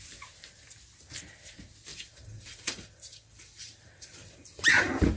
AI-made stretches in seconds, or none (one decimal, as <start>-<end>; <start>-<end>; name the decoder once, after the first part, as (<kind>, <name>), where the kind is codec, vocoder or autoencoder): 1.9-5.2 (vocoder, BigVGAN v2)